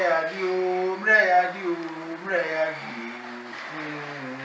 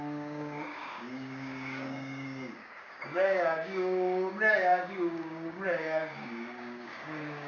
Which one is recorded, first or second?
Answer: first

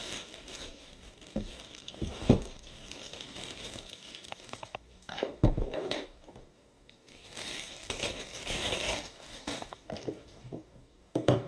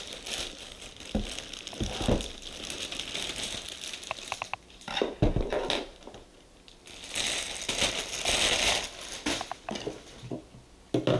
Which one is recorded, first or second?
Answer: second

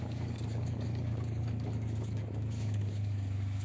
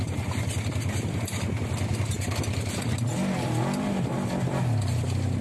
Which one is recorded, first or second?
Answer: second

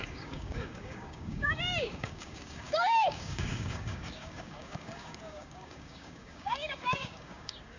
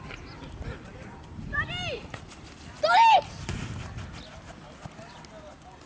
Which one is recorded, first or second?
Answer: second